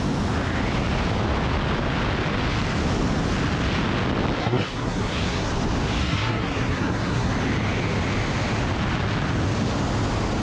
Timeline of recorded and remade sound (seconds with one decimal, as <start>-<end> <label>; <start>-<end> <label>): 0.0-4.4 recorded; 4.4-5.5 remade; 5.5-6.0 recorded; 6.0-7.3 remade; 7.3-10.4 recorded